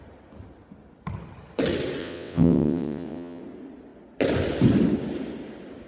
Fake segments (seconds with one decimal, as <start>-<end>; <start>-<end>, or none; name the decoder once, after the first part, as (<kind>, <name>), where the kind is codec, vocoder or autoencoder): 2.0-3.4 (vocoder, WaveNeXt)